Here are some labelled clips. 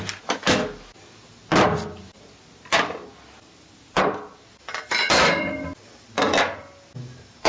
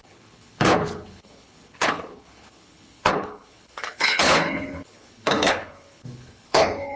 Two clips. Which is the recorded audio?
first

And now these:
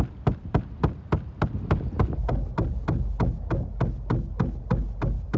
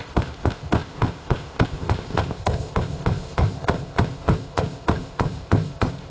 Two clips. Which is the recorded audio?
first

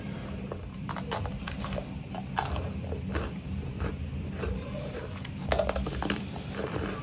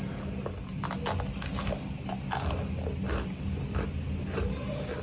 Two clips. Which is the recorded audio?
second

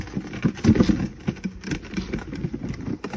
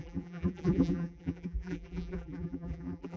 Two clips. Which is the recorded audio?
first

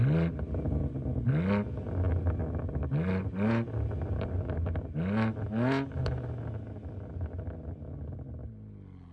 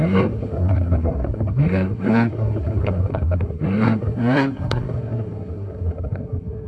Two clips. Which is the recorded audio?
first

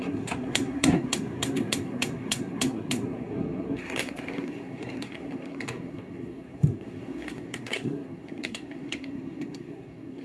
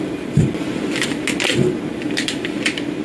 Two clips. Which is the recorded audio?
second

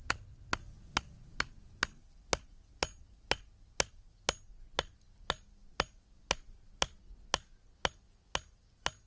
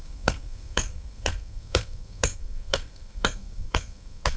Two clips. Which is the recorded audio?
first